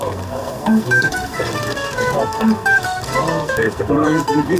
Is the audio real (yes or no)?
no